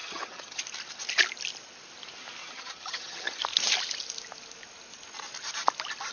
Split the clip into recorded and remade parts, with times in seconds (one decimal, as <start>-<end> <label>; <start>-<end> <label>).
0.0-0.6 remade; 0.6-2.4 recorded; 2.4-3.4 remade; 3.4-6.1 recorded